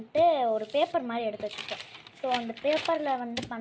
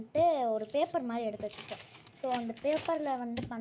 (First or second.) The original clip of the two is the first